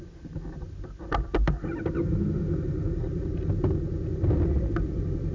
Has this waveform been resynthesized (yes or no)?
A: no